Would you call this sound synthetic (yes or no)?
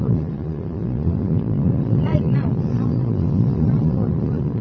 yes